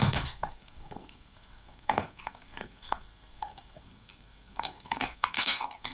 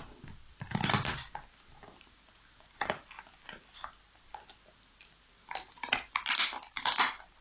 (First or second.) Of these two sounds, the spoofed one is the first